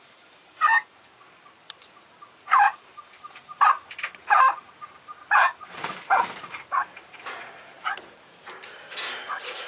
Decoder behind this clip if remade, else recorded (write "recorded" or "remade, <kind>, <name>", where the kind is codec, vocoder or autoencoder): remade, vocoder, BigVGAN v2